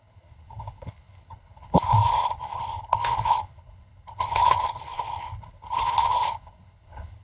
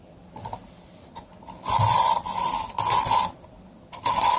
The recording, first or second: second